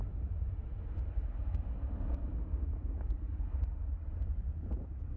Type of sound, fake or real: fake